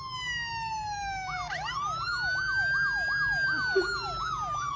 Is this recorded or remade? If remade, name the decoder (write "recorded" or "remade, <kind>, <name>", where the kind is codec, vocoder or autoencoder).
recorded